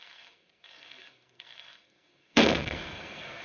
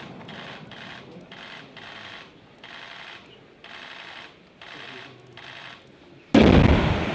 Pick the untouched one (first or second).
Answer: second